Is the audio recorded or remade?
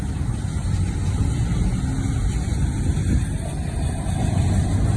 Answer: recorded